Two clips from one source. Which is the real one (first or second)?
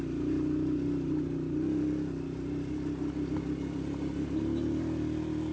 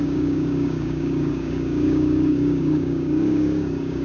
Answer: first